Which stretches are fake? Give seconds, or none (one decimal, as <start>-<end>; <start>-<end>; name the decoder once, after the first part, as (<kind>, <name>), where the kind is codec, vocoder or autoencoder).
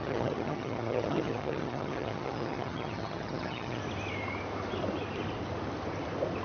0.0-3.8 (vocoder, HiFi-GAN)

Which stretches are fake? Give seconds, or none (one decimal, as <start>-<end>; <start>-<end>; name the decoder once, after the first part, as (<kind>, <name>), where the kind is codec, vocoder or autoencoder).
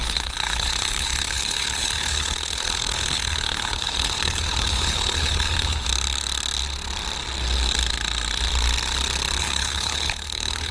0.0-5.9 (codec, HILCodec); 9.4-10.7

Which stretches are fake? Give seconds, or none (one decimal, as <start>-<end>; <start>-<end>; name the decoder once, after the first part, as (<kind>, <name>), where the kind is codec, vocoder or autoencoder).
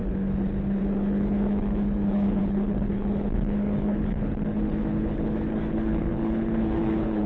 0.0-7.3 (codec, HILCodec)